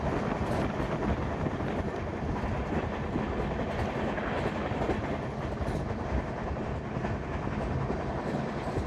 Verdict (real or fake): real